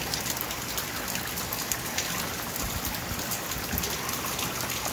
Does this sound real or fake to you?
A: real